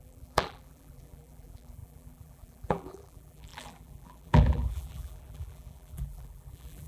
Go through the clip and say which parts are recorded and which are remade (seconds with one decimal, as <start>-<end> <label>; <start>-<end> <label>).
0.0-6.9 remade